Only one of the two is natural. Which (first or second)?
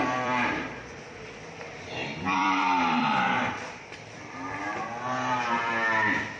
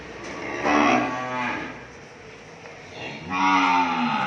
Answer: second